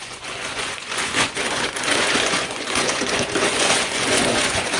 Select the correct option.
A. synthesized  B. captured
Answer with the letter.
A